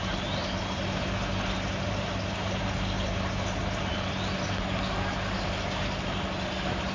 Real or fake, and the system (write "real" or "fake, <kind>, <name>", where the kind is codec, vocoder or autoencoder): real